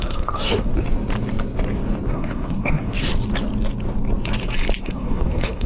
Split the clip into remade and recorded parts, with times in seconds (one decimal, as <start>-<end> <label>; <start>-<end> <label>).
0.0-0.7 remade; 0.7-2.1 recorded; 2.1-3.1 remade; 3.1-4.8 recorded; 4.8-5.7 remade